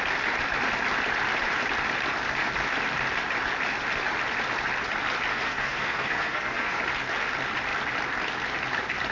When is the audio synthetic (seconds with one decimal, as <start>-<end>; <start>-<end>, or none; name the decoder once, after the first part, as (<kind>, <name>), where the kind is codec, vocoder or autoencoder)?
5.3-6.8 (codec, SNAC)